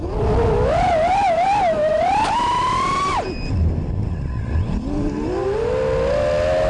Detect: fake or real real